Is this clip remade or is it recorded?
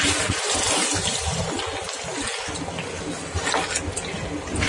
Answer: recorded